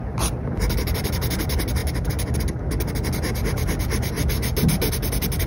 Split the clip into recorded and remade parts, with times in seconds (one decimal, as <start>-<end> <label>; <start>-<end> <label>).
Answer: 0.0-5.5 recorded